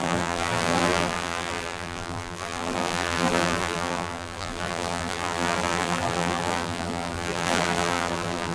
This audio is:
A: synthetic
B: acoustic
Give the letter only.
A